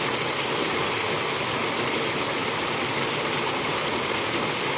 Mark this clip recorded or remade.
recorded